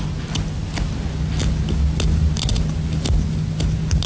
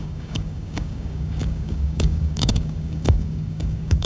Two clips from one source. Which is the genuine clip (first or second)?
first